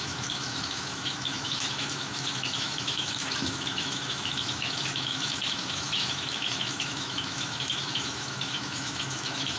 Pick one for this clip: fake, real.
fake